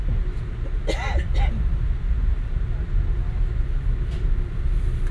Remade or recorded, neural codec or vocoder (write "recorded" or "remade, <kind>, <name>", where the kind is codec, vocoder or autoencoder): recorded